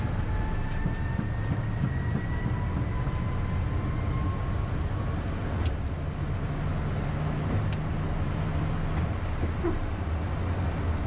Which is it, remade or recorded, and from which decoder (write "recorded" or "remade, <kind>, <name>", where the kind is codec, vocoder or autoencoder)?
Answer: recorded